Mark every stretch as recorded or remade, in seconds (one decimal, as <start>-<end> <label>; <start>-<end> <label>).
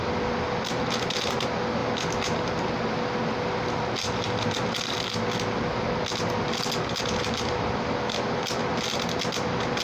0.0-9.8 recorded